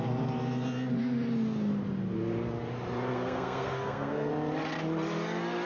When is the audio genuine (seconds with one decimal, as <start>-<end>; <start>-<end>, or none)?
0.0-3.1; 4.3-5.7